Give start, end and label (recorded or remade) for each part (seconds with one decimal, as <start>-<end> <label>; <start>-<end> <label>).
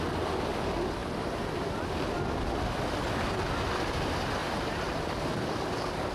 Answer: 0.0-6.1 recorded